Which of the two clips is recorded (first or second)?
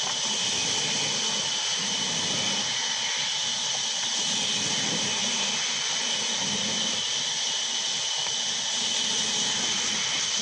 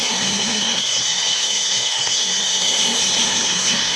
first